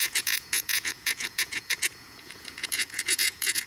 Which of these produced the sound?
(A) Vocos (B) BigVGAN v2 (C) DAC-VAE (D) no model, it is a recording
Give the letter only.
A